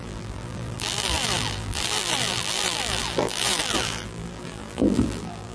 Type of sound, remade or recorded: remade